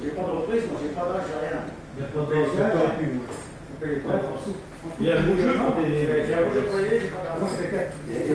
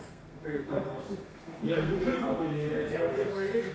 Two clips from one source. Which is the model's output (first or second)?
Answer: second